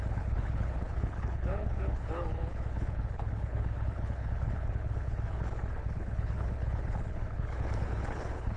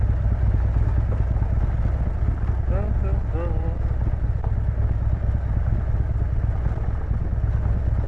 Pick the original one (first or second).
second